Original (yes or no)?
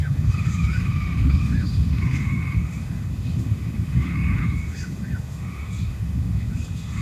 no